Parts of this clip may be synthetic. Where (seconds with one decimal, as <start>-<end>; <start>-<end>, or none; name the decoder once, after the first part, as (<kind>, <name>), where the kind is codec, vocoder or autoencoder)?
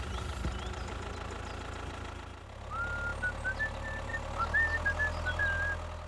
none